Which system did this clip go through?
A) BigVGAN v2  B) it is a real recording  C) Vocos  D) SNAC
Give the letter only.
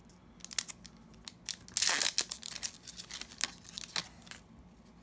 B